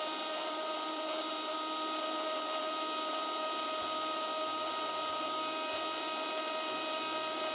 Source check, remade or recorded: recorded